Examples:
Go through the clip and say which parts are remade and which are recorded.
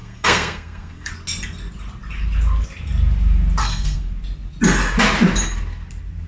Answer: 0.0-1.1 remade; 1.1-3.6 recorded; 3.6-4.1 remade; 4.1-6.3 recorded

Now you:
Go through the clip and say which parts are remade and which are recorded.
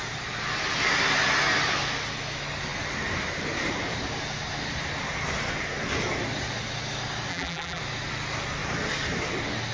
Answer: 0.0-7.3 recorded; 7.3-7.8 remade; 7.8-9.7 recorded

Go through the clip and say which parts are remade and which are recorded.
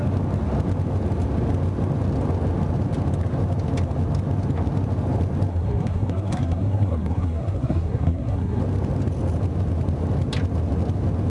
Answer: 0.0-5.5 recorded; 5.5-8.6 remade; 8.6-11.3 recorded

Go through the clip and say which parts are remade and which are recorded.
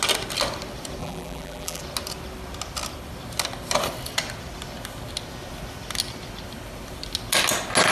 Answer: 0.0-1.0 recorded; 1.0-1.8 remade; 1.8-7.9 recorded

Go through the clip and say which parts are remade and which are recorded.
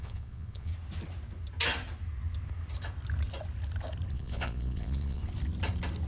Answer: 0.0-0.7 remade; 0.7-4.1 recorded; 4.1-5.2 remade; 5.2-6.1 recorded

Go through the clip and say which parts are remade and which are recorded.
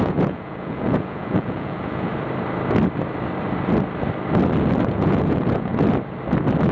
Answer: 0.0-2.1 remade; 2.1-4.9 recorded; 4.9-5.7 remade; 5.7-6.7 recorded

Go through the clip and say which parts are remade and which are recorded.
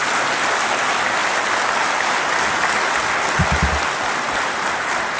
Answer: 0.0-5.2 recorded